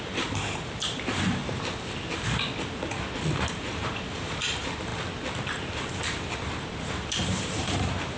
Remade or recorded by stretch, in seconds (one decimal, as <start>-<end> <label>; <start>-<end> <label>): 0.0-1.4 remade; 1.4-3.5 recorded; 3.5-4.9 remade; 4.9-6.9 recorded; 6.9-8.2 remade